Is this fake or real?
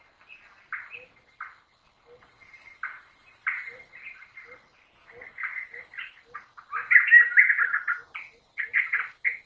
real